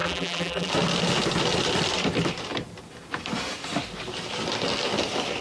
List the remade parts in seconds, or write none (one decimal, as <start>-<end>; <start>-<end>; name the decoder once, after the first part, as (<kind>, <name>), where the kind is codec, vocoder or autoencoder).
0.0-0.7 (vocoder, BigVGAN v2)